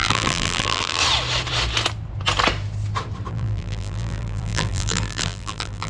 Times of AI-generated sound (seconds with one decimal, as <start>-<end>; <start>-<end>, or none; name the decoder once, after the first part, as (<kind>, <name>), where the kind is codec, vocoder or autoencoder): 0.0-1.0 (vocoder, BigVGAN v2); 3.3-5.9